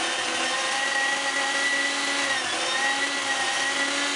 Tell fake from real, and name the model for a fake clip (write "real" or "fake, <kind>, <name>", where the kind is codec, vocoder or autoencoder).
real